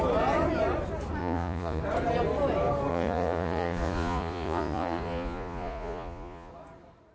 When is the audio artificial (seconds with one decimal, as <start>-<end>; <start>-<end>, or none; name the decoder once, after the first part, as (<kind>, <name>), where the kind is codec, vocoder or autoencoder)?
1.2-1.8 (vocoder, Vocos); 2.9-6.5